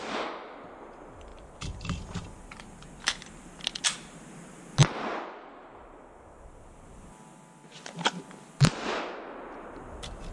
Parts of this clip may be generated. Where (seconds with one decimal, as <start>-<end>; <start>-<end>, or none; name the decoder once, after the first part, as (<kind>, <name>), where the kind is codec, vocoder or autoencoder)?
none